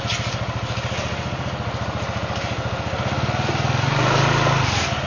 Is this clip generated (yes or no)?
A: no